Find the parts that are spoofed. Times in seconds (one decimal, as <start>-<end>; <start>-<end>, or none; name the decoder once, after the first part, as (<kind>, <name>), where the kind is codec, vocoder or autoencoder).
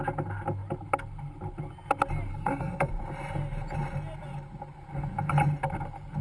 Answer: 2.3-2.9 (codec, SNAC)